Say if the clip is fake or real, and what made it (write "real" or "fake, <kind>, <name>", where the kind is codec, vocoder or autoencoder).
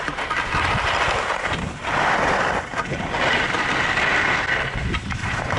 real